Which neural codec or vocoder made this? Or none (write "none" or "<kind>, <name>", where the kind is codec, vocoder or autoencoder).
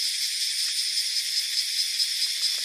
none